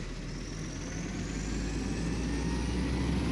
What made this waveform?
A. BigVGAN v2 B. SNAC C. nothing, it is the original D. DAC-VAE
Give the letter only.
C